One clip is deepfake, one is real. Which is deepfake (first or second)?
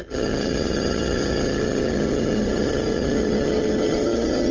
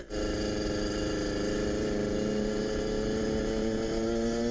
first